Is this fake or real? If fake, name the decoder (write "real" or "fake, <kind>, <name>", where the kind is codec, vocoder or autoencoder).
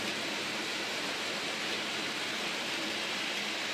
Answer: fake, vocoder, BigVGAN v2